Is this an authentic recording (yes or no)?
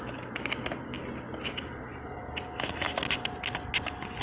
yes